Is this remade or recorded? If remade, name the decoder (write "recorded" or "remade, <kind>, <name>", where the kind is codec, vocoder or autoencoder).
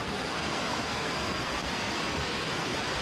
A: remade, codec, SNAC